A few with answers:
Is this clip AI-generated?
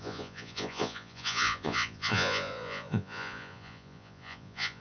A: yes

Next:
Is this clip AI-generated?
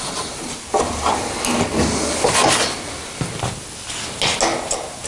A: no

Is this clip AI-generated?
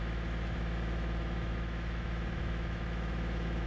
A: yes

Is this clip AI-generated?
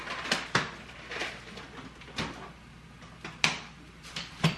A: no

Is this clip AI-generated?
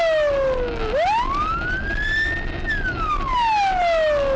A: no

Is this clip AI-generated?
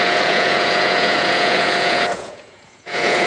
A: yes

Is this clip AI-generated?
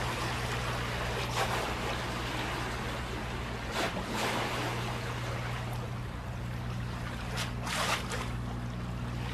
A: no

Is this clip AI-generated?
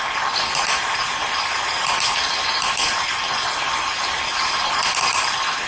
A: no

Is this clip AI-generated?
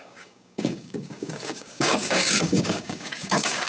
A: yes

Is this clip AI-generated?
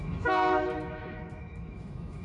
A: yes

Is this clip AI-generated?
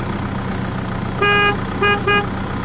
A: no